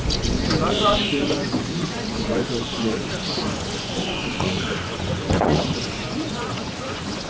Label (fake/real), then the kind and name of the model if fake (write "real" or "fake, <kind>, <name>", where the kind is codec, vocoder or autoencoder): fake, vocoder, Vocos